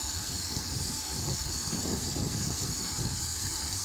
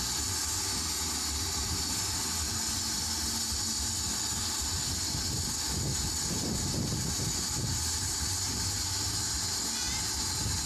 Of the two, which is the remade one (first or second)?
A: first